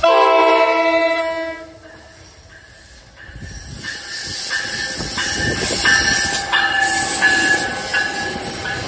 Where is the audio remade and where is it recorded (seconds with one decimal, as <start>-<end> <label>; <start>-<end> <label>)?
0.0-8.9 recorded